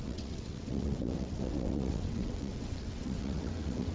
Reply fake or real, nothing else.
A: fake